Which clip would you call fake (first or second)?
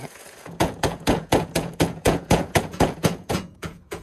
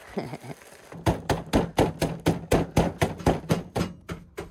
first